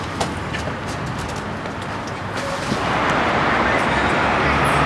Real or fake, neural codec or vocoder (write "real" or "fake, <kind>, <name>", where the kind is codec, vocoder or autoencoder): real